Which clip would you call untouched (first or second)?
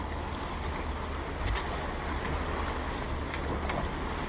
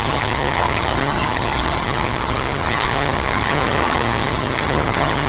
first